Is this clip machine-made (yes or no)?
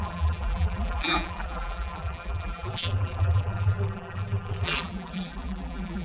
yes